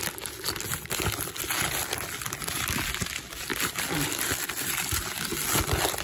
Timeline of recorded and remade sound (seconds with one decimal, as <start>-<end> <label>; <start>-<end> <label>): 0.0-6.0 recorded